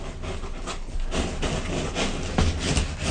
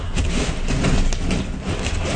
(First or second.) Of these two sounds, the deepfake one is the second